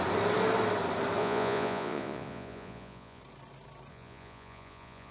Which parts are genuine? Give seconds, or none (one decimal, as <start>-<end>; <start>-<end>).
0.0-1.2; 3.2-3.9